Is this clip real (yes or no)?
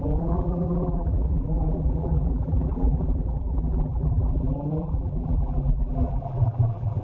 no